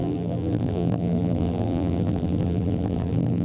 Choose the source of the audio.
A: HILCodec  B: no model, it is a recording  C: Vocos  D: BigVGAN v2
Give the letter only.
D